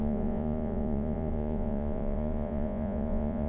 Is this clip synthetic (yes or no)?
yes